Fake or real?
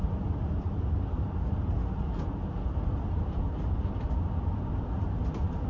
real